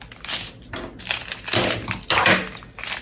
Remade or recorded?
recorded